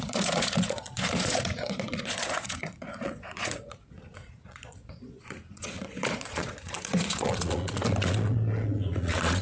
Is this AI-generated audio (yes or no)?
yes